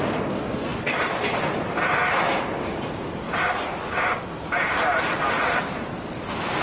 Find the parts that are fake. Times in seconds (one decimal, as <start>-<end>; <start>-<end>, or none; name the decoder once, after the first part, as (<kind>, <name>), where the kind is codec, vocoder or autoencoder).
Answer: 0.7-1.4 (vocoder, BigVGAN v2)